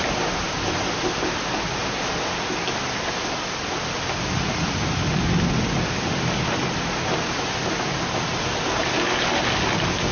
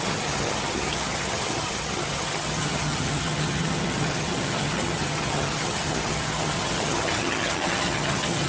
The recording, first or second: first